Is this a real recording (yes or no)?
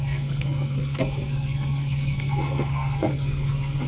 no